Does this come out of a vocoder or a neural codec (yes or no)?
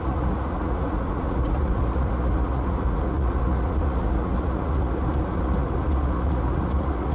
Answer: yes